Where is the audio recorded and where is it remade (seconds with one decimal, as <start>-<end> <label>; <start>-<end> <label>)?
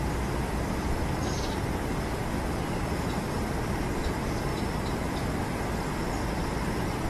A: 0.0-4.5 recorded; 4.5-5.1 remade; 5.1-7.1 recorded